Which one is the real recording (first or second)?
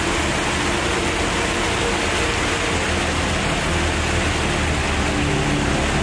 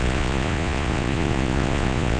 first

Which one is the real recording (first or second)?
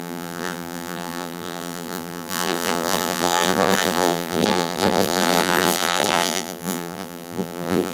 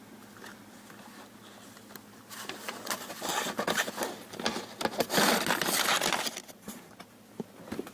second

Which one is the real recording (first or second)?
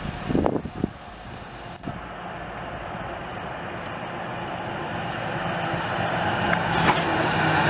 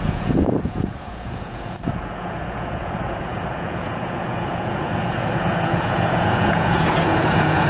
first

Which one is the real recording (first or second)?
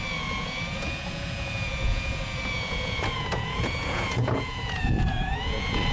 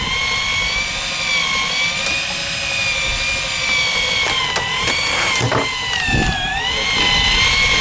second